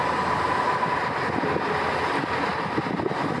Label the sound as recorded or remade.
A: recorded